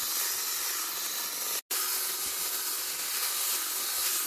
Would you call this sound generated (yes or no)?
no